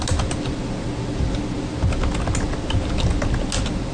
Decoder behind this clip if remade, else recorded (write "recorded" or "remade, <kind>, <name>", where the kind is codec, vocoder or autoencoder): recorded